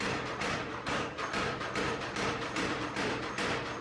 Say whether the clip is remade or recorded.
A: remade